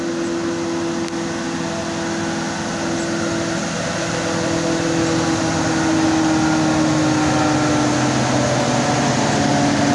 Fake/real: real